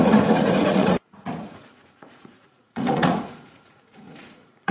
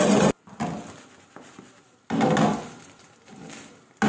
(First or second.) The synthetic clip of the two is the first